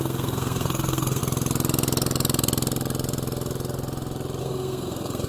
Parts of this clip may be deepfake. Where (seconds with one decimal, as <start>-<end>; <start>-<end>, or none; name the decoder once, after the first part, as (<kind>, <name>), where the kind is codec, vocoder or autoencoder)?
0.0-1.2 (codec, SNAC); 4.4-5.3

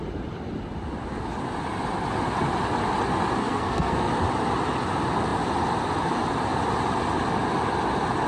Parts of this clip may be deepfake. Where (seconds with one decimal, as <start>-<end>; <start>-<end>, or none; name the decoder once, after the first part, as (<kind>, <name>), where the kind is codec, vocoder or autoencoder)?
3.4-4.1 (codec, SNAC)

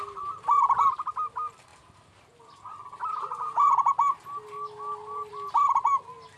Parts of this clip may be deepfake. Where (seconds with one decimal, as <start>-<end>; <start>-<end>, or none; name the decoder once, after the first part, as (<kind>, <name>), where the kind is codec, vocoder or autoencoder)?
none

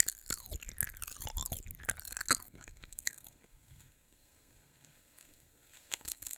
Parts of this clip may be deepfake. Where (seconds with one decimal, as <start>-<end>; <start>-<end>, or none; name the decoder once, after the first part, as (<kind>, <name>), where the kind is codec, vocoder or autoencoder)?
2.4-6.4 (codec, SNAC)